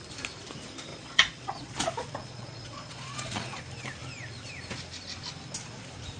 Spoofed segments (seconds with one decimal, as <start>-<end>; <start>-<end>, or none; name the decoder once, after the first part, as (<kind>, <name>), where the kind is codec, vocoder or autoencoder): 0.9-1.7 (vocoder, Vocos); 2.2-3.6